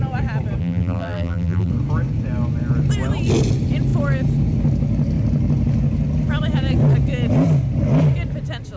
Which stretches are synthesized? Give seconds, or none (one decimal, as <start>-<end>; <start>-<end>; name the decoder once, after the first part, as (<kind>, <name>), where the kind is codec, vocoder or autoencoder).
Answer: 0.6-1.7 (vocoder, BigVGAN v2)